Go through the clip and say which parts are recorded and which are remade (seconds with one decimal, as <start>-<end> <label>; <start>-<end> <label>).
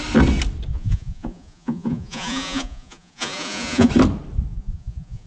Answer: 0.0-0.7 recorded; 0.7-3.9 remade; 3.9-4.5 recorded; 4.5-5.3 remade